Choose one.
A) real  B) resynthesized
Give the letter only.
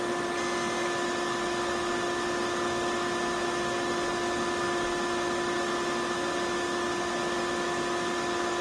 A